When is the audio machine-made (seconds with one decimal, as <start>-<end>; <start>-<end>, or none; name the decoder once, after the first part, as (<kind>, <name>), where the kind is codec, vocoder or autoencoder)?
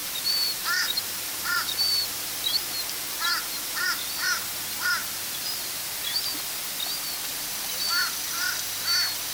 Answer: 0.0-3.3 (vocoder, BigVGAN v2); 5.0-6.0; 7.3-8.0